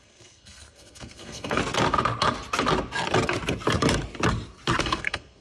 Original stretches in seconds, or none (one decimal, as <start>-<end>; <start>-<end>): 1.6-4.8